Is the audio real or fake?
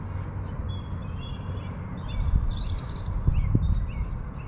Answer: real